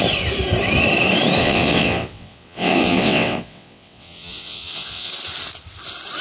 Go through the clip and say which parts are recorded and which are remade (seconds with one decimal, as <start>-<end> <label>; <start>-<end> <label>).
0.0-1.4 recorded; 1.4-5.1 remade; 5.1-6.2 recorded